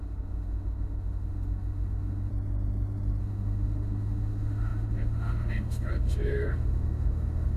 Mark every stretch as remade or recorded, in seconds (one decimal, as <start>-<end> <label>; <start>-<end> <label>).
0.0-2.3 remade; 2.3-3.2 recorded; 3.2-7.6 remade